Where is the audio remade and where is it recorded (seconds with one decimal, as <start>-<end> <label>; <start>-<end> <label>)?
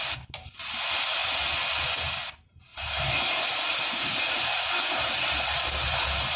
0.0-2.7 recorded; 2.7-6.4 remade